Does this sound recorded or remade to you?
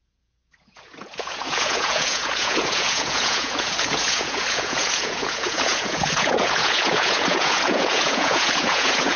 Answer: remade